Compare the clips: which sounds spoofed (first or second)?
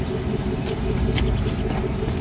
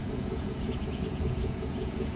second